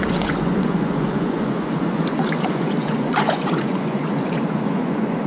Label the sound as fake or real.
fake